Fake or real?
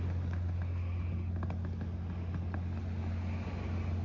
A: real